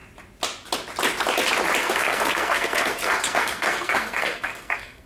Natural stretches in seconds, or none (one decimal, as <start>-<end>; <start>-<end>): 0.0-1.8